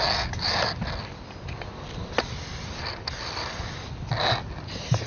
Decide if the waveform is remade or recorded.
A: recorded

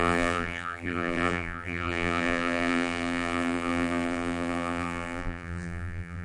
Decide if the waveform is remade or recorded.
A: remade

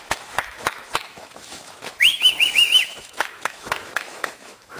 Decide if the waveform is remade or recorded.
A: remade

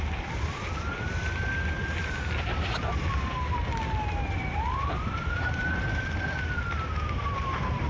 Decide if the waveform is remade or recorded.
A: remade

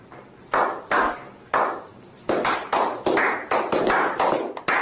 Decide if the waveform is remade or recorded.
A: recorded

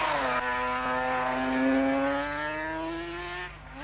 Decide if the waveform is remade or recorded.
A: recorded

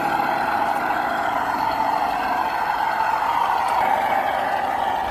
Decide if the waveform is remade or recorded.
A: recorded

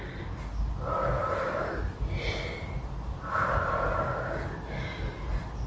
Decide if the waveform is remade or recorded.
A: recorded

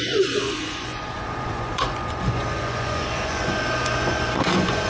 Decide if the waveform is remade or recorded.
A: remade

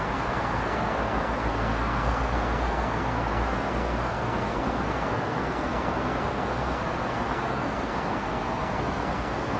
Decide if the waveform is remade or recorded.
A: remade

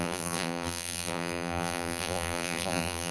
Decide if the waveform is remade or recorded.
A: remade